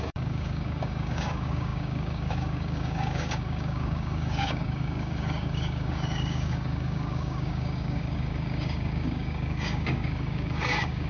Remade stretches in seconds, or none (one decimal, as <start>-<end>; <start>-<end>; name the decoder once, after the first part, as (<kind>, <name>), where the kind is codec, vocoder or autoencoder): 0.0-11.1 (codec, DAC)